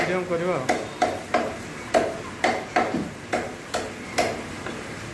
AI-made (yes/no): no